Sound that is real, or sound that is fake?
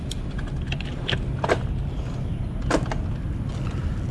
real